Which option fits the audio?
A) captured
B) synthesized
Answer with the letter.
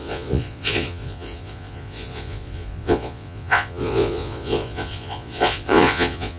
B